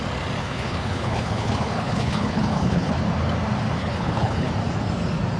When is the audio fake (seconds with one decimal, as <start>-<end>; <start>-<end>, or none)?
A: 0.4-3.0; 3.8-4.5